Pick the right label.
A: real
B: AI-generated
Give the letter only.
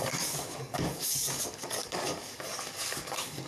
B